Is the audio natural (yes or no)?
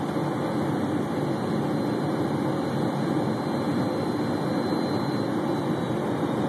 yes